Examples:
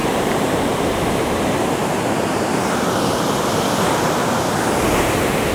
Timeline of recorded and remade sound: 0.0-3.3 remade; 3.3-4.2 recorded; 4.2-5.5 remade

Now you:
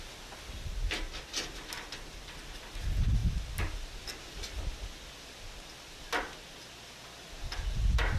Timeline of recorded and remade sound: 0.0-8.2 recorded

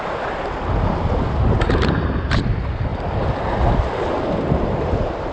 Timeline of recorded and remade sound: 0.0-5.3 recorded

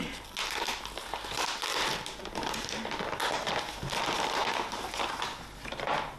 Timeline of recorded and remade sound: 0.0-6.2 recorded

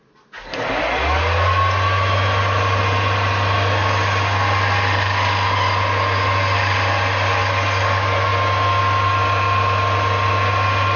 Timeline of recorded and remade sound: 0.0-11.0 recorded

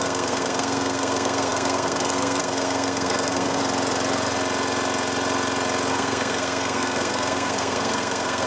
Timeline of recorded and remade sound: 0.0-3.6 remade; 3.6-5.9 recorded; 5.9-8.5 remade

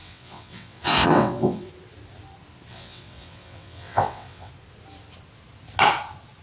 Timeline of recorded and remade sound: 0.0-1.7 remade; 1.7-2.7 recorded; 2.7-4.5 remade; 4.5-6.4 recorded

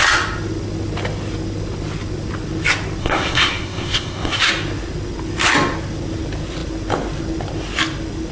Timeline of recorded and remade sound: 0.0-3.0 recorded; 3.0-4.5 remade; 4.5-8.3 recorded